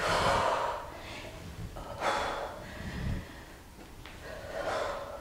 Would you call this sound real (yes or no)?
yes